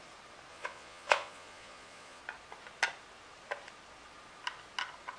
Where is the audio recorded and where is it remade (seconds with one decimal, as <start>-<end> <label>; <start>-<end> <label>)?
0.0-0.5 recorded; 0.5-2.2 remade; 2.2-5.2 recorded